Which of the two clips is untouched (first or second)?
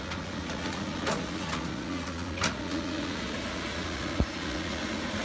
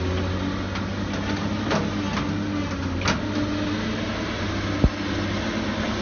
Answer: second